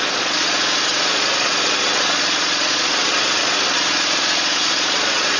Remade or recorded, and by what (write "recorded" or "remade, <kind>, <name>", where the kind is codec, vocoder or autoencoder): remade, vocoder, Vocos